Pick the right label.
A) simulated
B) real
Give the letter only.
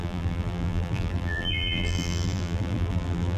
A